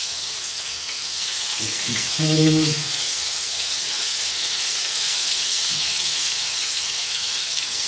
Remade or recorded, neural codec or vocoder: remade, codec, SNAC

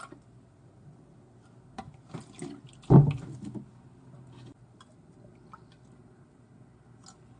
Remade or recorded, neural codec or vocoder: recorded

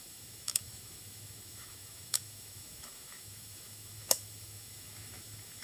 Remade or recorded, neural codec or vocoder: remade, autoencoder, DAC-VAE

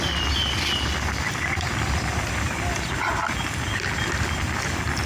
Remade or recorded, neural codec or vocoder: recorded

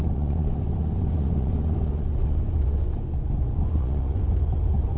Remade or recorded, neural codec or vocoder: remade, vocoder, Vocos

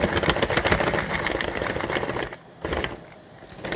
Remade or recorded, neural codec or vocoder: recorded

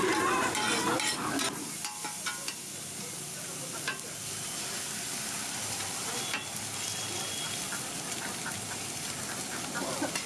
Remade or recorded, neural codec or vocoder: recorded